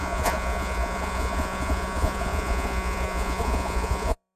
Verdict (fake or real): fake